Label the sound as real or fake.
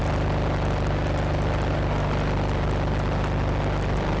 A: real